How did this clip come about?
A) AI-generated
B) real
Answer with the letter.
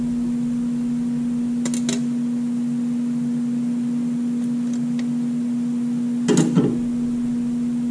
B